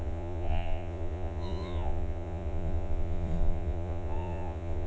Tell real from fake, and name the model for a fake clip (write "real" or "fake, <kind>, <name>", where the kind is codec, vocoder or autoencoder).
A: fake, vocoder, Vocos